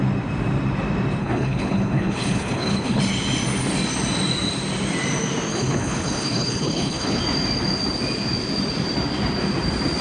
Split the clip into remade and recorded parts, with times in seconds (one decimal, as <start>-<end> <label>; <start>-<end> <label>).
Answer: 0.0-1.2 recorded; 1.2-3.0 remade; 3.0-5.5 recorded; 5.5-7.2 remade; 7.2-10.0 recorded